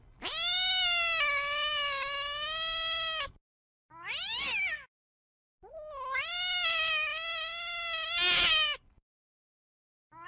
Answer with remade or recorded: recorded